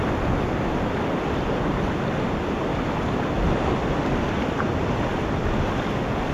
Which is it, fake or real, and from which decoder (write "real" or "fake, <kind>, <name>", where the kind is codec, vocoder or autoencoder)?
real